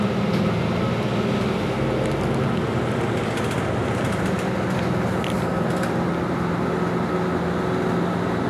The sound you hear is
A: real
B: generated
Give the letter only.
A